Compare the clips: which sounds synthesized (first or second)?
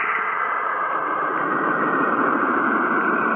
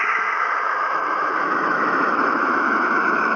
second